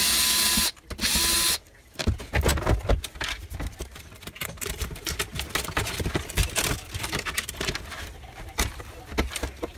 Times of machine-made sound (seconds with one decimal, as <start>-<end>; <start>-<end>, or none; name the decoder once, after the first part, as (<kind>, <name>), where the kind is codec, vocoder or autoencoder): 4.4-5.3 (vocoder, BigVGAN v2)